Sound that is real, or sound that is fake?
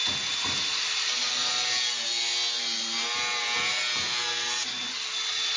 real